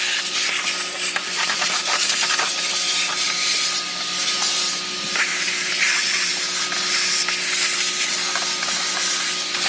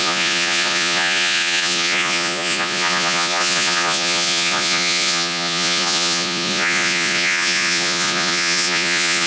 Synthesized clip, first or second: second